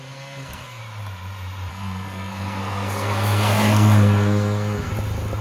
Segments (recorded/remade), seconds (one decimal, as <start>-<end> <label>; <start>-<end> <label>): 0.0-0.8 remade; 0.8-1.7 recorded; 1.7-4.9 remade; 4.9-5.4 recorded